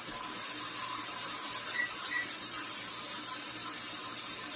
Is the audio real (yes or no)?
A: yes